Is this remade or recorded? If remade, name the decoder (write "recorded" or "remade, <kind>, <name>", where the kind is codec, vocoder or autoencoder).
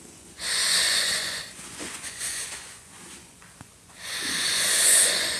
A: remade, vocoder, Vocos